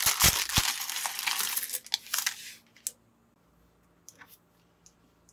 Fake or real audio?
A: real